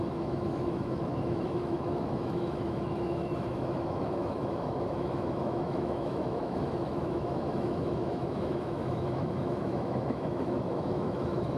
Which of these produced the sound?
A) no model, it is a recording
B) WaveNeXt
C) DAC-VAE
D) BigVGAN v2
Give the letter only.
C